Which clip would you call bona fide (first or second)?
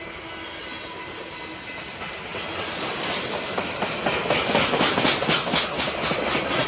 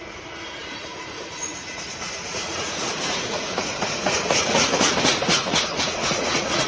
first